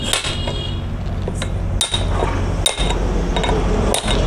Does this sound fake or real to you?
real